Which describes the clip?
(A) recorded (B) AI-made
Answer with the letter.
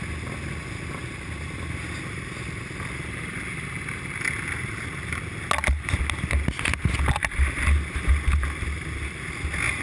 A